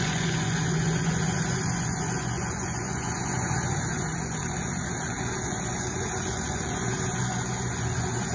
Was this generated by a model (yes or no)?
yes